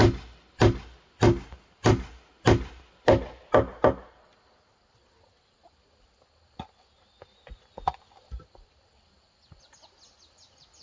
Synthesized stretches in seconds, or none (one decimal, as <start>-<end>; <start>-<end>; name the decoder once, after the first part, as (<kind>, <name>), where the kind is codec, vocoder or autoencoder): none

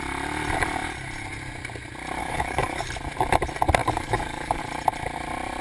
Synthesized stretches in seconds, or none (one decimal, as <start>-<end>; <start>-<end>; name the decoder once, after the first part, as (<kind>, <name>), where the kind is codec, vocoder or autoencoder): 2.2-2.9 (codec, DAC); 3.8-4.6

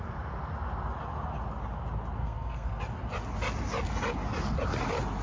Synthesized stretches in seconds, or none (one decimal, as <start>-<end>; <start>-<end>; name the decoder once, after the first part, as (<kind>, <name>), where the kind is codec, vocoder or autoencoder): 2.2-2.8 (codec, SNAC)